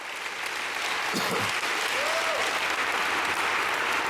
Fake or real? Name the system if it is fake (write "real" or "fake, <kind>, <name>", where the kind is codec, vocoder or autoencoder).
real